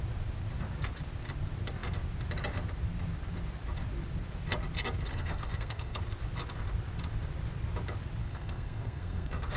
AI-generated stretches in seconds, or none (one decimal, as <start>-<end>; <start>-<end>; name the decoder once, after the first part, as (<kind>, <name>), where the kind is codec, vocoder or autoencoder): 5.1-6.0 (codec, SNAC); 8.2-9.6